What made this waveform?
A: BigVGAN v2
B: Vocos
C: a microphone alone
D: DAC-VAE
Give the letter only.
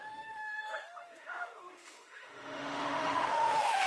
D